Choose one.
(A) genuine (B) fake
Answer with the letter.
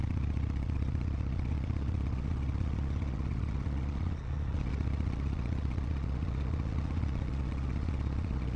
B